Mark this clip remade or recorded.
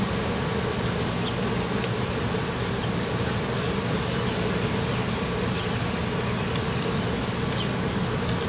recorded